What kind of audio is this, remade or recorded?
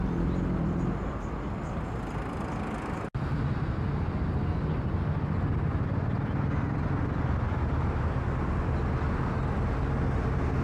recorded